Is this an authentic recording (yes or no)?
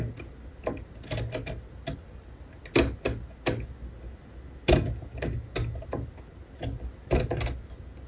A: yes